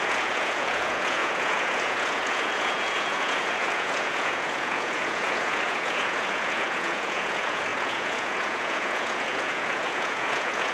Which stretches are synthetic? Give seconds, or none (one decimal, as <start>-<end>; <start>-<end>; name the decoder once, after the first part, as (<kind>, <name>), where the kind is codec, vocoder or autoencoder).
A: 0.0-10.7 (vocoder, Vocos)